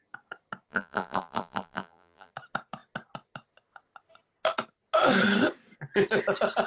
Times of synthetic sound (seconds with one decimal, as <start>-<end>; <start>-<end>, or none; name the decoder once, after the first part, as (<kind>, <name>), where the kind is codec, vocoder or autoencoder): 0.7-2.3 (vocoder, BigVGAN v2)